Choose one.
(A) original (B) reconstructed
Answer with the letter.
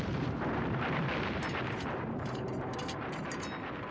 B